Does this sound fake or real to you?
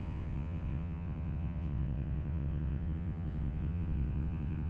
fake